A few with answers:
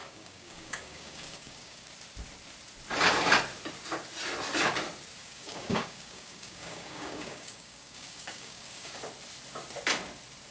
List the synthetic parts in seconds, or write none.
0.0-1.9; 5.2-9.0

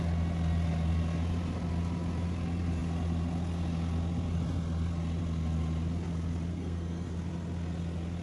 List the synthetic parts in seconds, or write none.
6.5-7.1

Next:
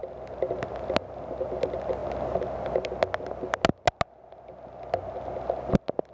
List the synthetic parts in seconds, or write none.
none

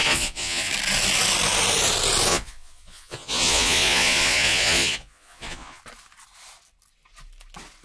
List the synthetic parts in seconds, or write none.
0.0-0.7; 2.3-5.8

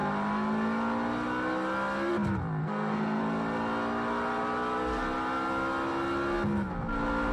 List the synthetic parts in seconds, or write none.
2.6-3.2

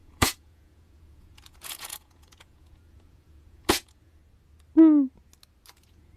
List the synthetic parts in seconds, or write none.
0.0-4.2; 5.7-6.2